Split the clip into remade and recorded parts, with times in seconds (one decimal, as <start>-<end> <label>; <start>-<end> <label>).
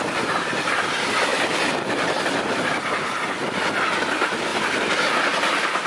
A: 0.0-5.9 recorded